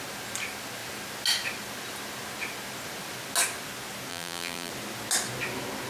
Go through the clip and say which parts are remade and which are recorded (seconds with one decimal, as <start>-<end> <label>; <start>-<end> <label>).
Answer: 0.0-4.1 recorded; 4.1-4.7 remade; 4.7-5.9 recorded